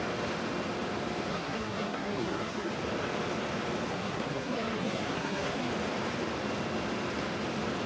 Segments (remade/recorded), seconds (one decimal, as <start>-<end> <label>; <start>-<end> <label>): 0.0-1.3 recorded; 1.3-2.7 remade; 2.7-3.9 recorded; 3.9-5.7 remade; 5.7-7.9 recorded